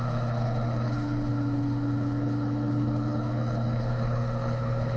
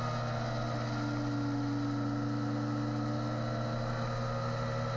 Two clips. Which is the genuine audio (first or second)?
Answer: second